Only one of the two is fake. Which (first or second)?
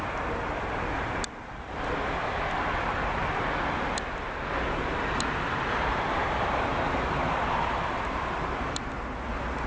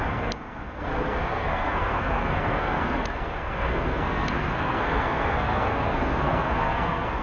second